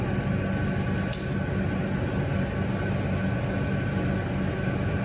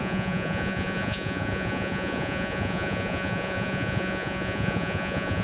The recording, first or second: first